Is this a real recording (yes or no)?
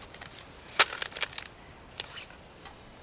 yes